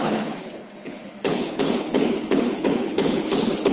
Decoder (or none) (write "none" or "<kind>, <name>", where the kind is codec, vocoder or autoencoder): codec, HILCodec